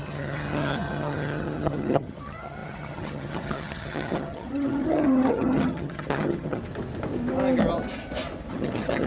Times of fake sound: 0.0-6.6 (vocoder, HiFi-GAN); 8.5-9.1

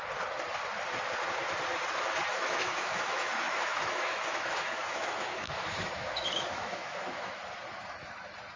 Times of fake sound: 2.3-7.4 (autoencoder, DAC-VAE)

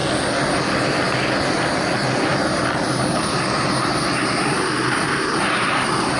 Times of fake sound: 2.3-6.2 (vocoder, BigVGAN v2)

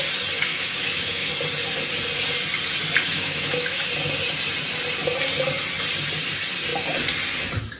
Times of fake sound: 0.5-1.3 (autoencoder, DAC-VAE); 3.1-3.9

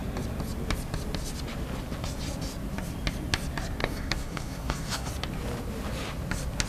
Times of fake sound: 3.8-5.1 (codec, DAC)

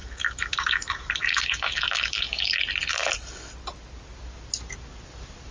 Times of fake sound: 0.0-2.6 (autoencoder, DAC-VAE)

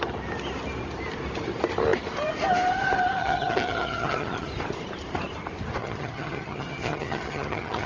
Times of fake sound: 3.2-4.5 (vocoder, HiFi-GAN); 5.8-7.9